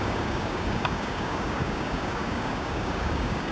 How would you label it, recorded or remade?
remade